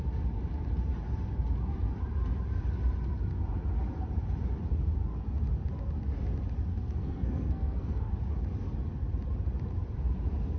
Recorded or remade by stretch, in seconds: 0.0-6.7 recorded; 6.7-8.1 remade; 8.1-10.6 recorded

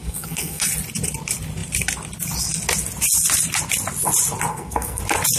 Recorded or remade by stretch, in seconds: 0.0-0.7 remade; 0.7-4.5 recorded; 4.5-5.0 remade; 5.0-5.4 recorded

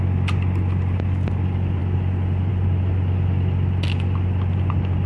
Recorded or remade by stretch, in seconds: 0.0-5.1 recorded

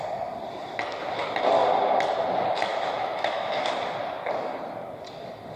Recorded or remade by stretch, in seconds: 0.0-2.7 recorded; 2.7-3.7 remade; 3.7-5.6 recorded

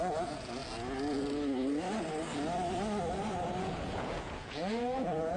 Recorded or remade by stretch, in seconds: 0.0-0.6 remade; 0.6-3.6 recorded; 3.6-5.4 remade

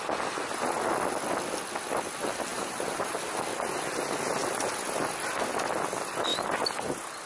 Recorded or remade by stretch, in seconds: 0.0-2.5 recorded; 2.5-3.4 remade; 3.4-7.3 recorded

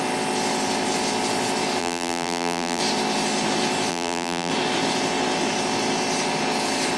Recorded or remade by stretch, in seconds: 0.0-1.8 recorded; 1.8-2.8 remade; 2.8-3.9 recorded; 3.9-4.5 remade; 4.5-7.0 recorded